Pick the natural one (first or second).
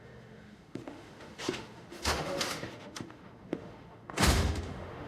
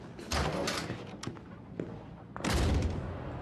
second